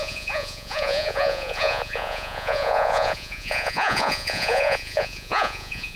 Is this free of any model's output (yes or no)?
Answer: no